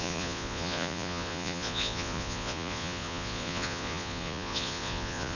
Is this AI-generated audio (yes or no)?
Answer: yes